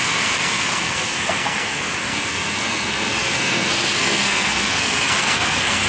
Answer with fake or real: fake